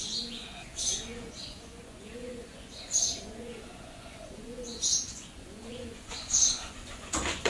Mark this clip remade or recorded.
remade